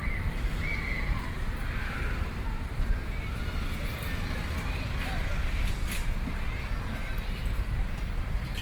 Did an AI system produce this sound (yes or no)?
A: no